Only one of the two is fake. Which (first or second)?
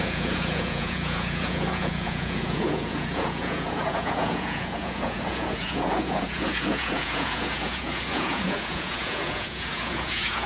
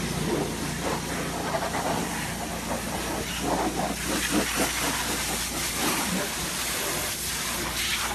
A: first